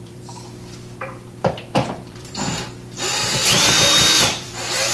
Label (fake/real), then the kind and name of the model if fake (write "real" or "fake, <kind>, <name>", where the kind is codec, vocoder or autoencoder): fake, vocoder, BigVGAN v2